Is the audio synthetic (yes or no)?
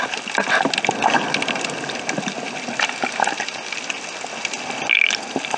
no